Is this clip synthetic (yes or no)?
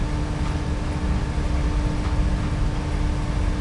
no